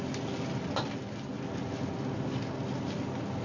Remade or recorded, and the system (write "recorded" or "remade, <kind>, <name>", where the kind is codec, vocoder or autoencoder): recorded